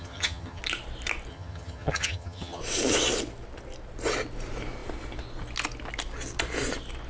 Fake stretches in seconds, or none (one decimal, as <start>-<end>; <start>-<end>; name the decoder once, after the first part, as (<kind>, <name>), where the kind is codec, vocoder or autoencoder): 0.0-0.6 (vocoder, HiFi-GAN); 1.3-2.6